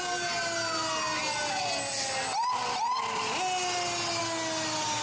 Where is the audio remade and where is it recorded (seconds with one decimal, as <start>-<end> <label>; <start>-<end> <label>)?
0.0-5.0 recorded